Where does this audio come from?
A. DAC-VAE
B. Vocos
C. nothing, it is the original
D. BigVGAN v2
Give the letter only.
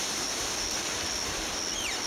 D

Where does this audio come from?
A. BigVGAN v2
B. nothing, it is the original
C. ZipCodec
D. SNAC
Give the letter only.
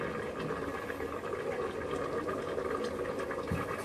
B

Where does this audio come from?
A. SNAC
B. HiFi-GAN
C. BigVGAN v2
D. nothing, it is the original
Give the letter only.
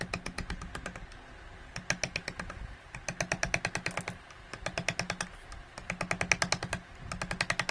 D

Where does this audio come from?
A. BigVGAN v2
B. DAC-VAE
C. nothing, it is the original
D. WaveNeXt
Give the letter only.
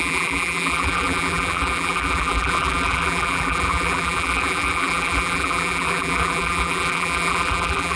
A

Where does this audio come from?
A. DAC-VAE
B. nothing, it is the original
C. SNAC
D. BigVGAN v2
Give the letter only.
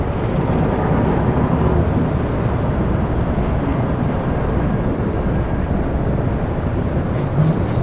B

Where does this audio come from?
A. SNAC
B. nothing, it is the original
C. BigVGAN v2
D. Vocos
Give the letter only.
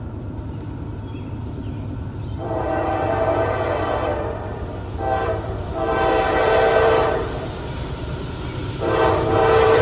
C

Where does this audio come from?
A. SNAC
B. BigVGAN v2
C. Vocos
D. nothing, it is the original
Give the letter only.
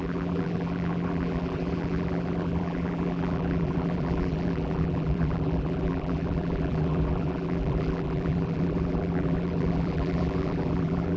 B